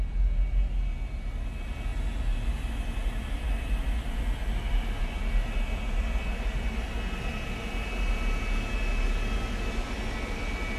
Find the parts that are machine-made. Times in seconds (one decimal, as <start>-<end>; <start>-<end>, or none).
none